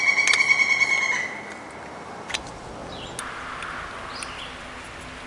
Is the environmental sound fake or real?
real